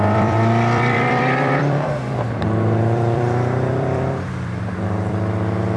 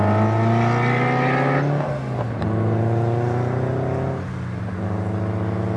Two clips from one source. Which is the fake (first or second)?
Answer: first